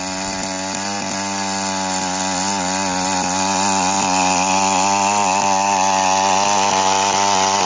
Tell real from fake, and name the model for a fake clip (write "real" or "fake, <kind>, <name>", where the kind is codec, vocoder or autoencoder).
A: real